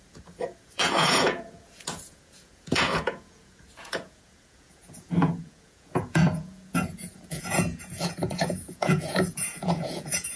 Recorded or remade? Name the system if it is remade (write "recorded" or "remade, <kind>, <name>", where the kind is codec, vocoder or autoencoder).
remade, vocoder, Vocos